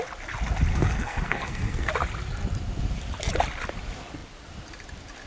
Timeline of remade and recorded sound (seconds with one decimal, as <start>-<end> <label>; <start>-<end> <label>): 0.0-0.7 recorded; 0.7-1.9 remade; 1.9-5.3 recorded